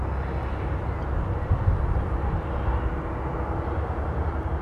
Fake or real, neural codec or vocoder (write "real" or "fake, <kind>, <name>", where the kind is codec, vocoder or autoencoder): real